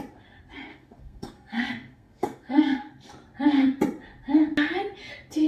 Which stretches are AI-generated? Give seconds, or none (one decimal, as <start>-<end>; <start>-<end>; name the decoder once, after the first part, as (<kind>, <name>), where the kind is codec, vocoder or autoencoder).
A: 0.7-3.1 (codec, SNAC)